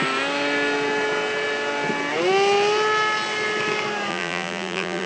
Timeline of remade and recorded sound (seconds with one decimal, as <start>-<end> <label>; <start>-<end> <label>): 0.0-4.1 recorded; 4.1-5.1 remade